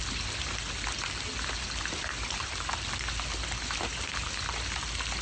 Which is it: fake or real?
real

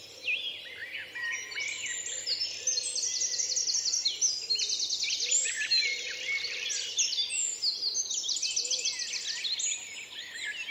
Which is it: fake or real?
real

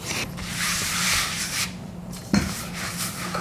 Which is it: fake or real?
fake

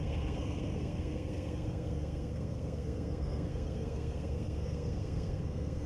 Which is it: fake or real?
fake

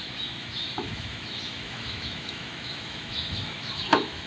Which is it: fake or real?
fake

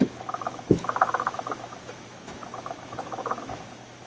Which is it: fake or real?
fake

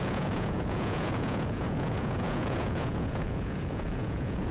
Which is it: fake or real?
fake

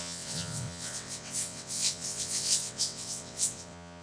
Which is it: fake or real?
fake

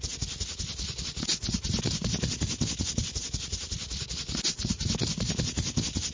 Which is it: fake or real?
real